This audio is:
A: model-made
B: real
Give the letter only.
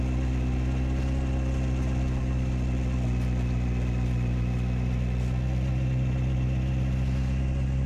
B